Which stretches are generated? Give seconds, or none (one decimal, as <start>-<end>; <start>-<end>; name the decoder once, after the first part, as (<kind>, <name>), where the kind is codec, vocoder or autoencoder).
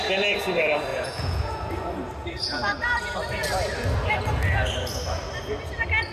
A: 0.9-1.5 (vocoder, Vocos)